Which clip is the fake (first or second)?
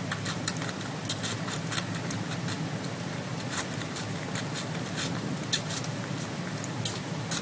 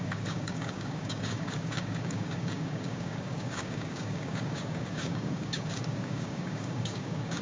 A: second